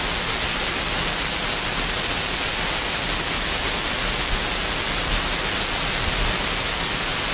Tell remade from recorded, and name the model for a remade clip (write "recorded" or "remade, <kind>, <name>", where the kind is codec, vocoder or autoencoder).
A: recorded